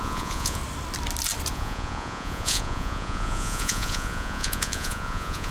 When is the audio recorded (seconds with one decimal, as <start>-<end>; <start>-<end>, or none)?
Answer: 0.6-1.5

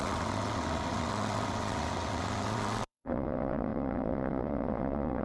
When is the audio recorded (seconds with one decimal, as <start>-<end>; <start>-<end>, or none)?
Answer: none

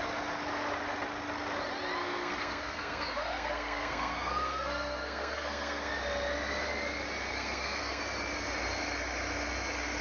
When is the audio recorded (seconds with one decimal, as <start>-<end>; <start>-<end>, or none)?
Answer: 0.0-2.0; 5.9-7.3; 8.0-10.0

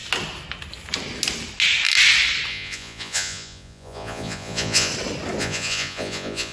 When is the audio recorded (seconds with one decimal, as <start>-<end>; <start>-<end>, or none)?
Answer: 0.0-2.5; 4.9-5.4